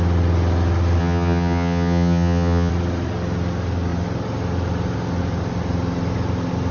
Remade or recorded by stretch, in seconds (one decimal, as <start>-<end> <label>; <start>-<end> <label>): 0.0-1.0 recorded; 1.0-2.7 remade; 2.7-6.7 recorded